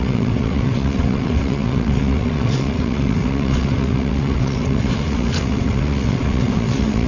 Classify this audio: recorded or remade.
remade